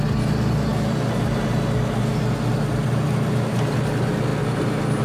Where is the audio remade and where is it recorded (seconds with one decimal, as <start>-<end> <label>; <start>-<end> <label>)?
0.0-5.0 recorded